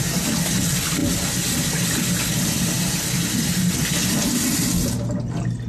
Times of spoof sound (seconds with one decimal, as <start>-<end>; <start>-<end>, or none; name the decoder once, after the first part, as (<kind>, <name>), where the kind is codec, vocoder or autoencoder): none